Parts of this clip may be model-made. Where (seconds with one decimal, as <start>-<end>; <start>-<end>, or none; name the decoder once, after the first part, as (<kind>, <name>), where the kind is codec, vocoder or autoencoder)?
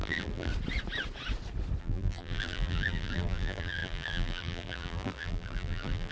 0.0-0.5 (vocoder, BigVGAN v2); 1.8-6.1